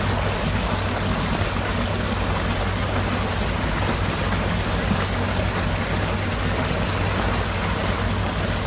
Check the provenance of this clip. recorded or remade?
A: recorded